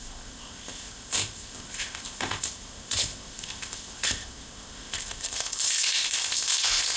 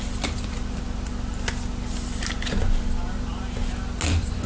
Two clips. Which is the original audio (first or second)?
second